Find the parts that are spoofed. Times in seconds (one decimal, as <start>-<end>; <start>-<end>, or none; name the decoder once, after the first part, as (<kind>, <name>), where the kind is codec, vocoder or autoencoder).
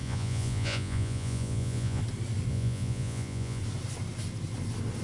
0.0-2.0 (vocoder, Vocos); 2.5-3.6